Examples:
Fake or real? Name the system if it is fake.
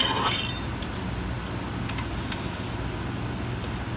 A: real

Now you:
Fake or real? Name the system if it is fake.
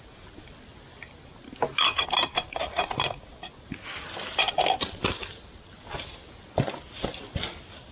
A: real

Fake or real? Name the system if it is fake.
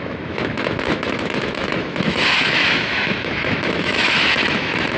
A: fake, autoencoder, DAC-VAE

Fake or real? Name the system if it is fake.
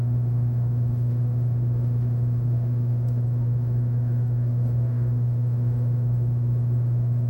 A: fake, autoencoder, DAC-VAE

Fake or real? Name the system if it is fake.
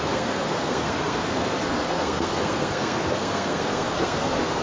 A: fake, codec, SNAC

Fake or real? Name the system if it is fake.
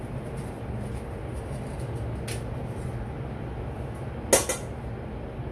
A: real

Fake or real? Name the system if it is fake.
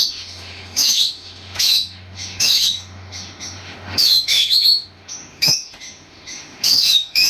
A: fake, autoencoder, DAC-VAE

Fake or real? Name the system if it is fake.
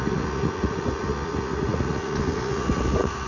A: fake, vocoder, Vocos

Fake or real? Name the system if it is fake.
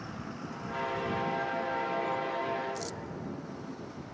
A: real